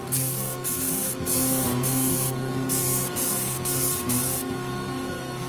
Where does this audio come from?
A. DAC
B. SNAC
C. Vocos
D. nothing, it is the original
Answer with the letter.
B